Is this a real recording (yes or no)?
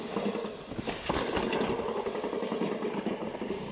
yes